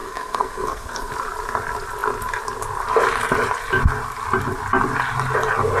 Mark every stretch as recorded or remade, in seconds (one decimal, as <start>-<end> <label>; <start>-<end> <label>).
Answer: 0.0-1.1 remade; 1.1-5.8 recorded